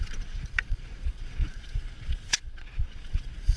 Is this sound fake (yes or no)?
yes